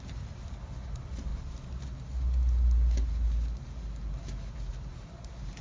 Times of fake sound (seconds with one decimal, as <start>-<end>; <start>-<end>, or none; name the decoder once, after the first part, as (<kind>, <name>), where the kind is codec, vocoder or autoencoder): none